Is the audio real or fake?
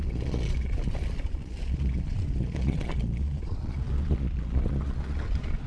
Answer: fake